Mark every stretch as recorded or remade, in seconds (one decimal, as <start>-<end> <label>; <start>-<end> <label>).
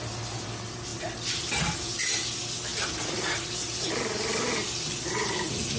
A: 0.0-5.8 recorded